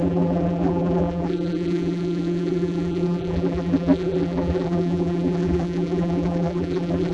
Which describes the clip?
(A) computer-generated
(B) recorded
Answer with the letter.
A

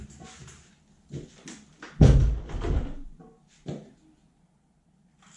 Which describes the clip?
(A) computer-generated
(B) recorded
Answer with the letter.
B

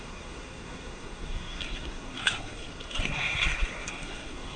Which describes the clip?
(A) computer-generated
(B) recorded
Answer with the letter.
A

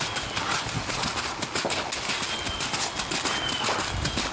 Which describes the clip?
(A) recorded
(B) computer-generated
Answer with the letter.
A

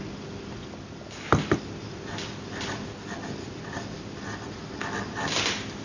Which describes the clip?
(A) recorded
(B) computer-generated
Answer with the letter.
A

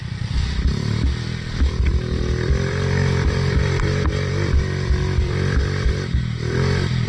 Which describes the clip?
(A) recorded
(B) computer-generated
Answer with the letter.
B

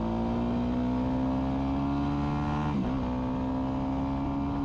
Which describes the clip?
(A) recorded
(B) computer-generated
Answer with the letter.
A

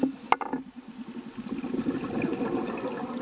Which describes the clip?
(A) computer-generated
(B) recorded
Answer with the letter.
B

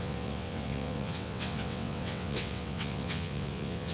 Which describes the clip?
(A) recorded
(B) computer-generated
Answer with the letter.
B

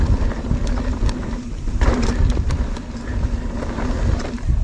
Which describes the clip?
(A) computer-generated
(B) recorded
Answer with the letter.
B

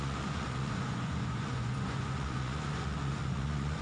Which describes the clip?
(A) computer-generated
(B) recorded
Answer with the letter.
A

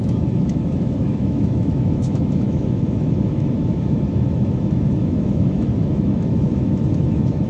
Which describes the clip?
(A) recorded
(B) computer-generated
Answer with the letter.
B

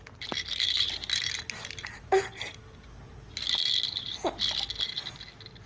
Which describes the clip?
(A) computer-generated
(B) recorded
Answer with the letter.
B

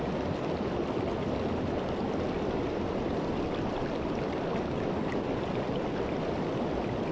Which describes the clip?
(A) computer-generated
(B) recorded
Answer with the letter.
B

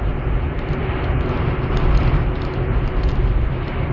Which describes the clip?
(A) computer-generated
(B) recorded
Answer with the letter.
B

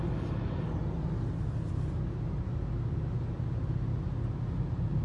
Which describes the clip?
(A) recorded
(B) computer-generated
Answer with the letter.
A